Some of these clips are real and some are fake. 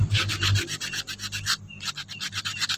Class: real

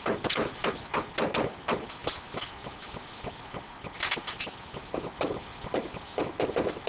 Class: real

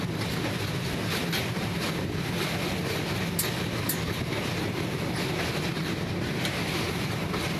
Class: real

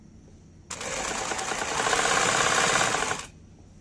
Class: real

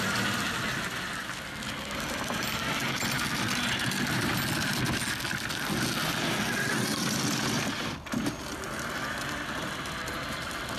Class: real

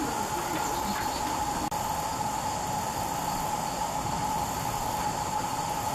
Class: real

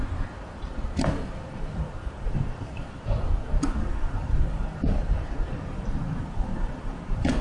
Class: fake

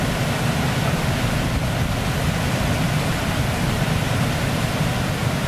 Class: real